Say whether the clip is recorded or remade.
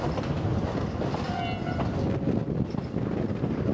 recorded